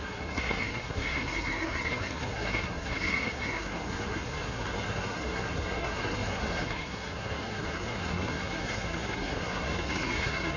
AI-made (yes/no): yes